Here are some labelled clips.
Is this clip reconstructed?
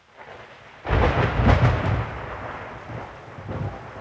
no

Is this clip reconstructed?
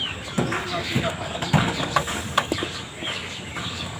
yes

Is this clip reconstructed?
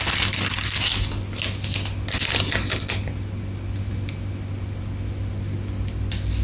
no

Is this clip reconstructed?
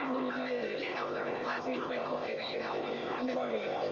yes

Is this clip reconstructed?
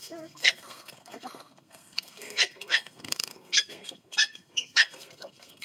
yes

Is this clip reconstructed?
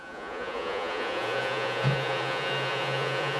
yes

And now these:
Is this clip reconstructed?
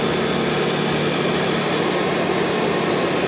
no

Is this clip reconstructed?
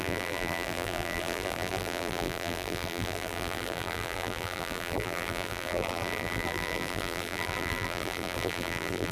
yes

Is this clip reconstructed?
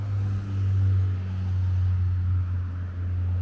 no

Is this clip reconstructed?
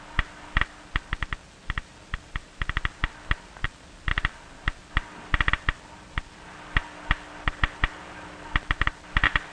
no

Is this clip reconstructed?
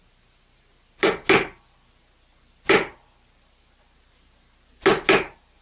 no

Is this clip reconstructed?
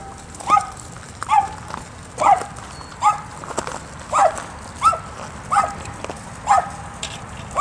no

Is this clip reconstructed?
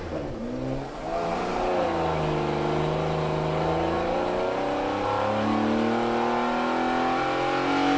no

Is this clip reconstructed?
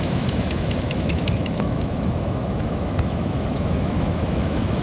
yes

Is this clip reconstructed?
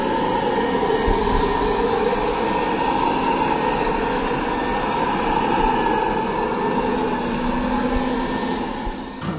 no